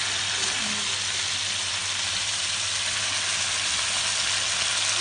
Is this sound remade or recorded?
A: recorded